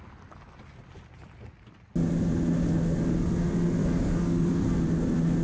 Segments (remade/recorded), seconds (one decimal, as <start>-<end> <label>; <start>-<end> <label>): 0.0-3.8 recorded; 3.8-4.5 remade; 4.5-5.4 recorded